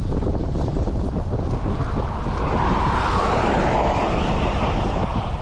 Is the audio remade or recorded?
recorded